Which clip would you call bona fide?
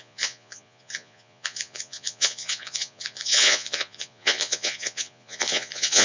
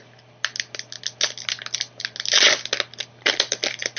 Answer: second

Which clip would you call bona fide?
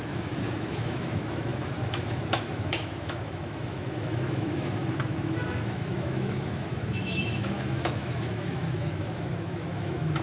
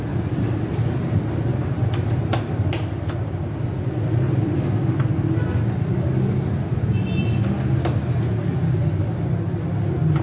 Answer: second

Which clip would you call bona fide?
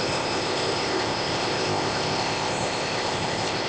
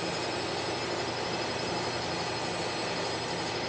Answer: second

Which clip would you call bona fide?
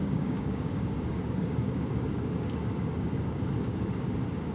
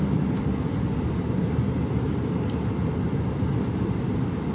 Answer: second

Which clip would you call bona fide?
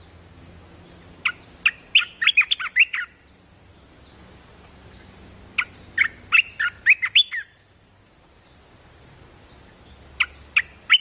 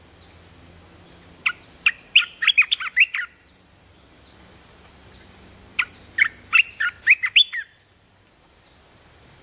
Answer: first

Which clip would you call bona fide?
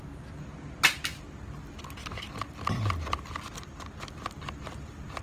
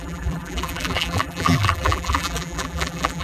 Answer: first